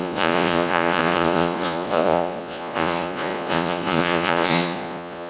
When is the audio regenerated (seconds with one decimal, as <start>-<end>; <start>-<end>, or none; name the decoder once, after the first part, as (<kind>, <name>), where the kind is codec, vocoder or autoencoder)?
0.0-5.3 (vocoder, Vocos)